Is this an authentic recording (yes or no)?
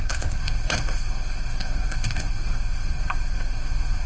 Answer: no